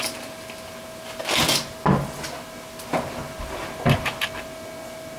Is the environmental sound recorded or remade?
recorded